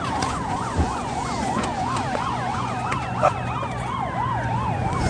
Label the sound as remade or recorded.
remade